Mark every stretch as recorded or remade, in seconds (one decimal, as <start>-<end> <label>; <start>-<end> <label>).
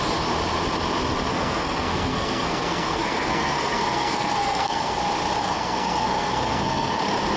0.0-1.3 recorded; 1.3-5.0 remade; 5.0-5.4 recorded; 5.4-7.0 remade; 7.0-7.4 recorded